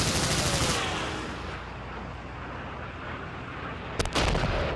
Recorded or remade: recorded